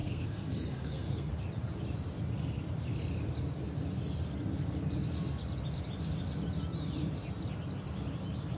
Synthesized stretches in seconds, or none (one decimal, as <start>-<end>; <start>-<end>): 0.0-1.3